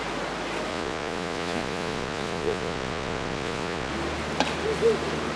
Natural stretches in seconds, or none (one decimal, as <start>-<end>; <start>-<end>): 0.0-0.7; 3.9-5.4

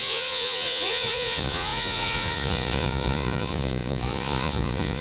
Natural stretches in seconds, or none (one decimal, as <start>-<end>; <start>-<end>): none

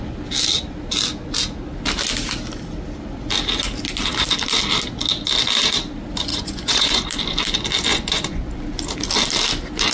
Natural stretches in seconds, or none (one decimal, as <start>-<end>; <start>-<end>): 0.0-6.3; 7.0-7.9; 8.5-9.9

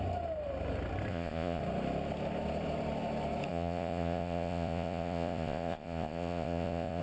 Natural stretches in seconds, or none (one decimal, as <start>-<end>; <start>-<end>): 0.0-1.1; 1.6-3.5

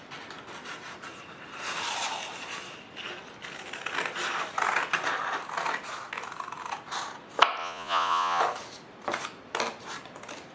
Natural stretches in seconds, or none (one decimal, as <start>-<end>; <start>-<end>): 0.0-7.6; 8.4-10.5

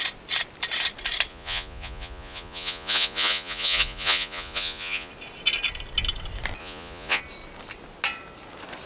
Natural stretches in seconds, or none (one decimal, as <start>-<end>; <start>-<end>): 0.0-1.3; 5.1-6.6; 7.2-8.9

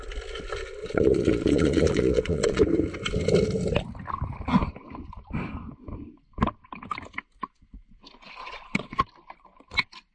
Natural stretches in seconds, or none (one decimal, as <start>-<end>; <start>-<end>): 0.0-0.8; 2.6-8.4; 9.0-10.1